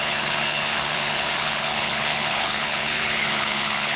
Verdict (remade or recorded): remade